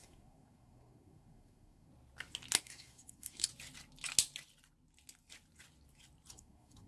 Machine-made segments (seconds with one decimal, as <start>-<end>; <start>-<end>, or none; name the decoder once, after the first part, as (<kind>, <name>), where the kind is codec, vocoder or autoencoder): 0.0-1.9 (codec, SNAC); 2.6-3.5; 6.3-6.9